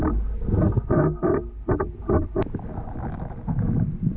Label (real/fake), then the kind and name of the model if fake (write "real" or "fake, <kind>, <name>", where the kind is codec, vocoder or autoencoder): real